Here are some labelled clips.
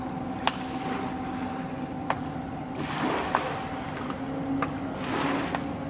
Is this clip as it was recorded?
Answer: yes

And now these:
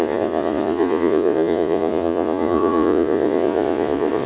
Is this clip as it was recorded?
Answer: no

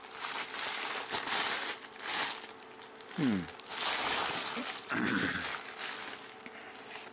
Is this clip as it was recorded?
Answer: yes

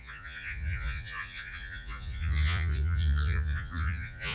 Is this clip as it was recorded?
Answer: no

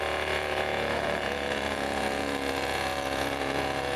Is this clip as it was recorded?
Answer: no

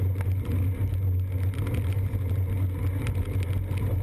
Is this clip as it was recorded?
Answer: yes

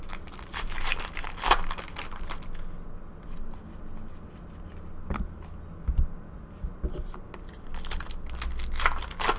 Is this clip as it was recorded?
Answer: yes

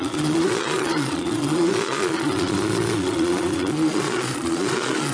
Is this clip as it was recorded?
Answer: no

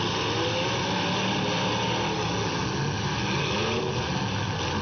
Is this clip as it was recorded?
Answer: yes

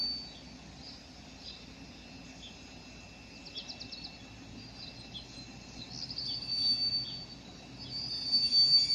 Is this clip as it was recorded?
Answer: yes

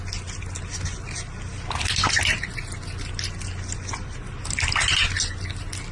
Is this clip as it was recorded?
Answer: yes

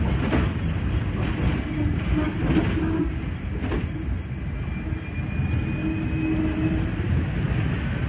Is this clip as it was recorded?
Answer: yes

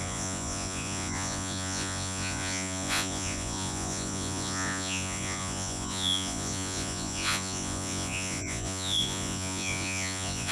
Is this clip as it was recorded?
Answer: no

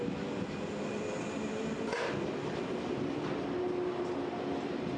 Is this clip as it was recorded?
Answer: yes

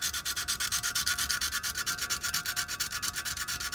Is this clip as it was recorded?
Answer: yes